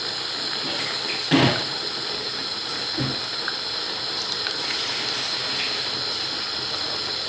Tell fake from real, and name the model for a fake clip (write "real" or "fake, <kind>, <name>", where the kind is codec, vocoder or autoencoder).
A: real